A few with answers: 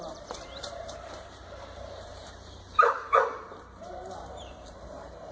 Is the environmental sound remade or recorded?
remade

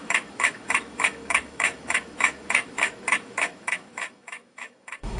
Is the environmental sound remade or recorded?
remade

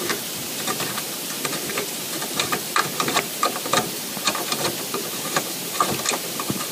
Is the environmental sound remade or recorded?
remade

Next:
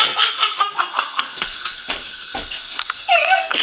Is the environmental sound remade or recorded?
remade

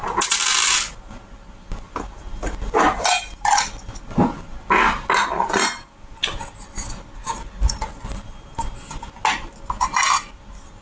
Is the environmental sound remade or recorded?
recorded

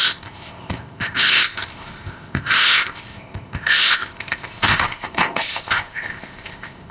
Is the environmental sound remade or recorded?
remade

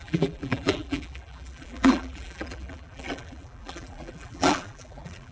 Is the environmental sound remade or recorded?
remade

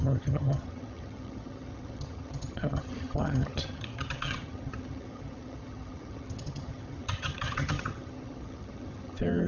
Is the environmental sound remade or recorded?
remade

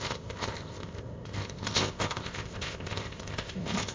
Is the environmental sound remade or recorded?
remade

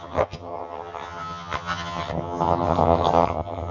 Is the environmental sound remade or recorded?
remade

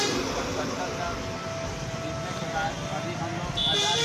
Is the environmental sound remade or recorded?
recorded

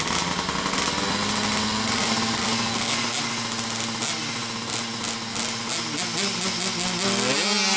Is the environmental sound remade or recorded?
recorded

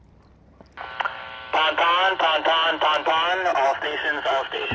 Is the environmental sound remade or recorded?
recorded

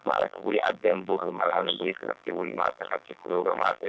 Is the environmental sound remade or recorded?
remade